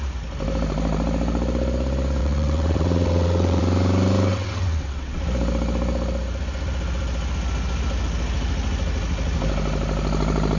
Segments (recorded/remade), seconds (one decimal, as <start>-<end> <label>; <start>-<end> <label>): 0.0-2.2 recorded; 2.2-3.6 remade; 3.6-4.3 recorded; 4.3-5.2 remade; 5.2-10.6 recorded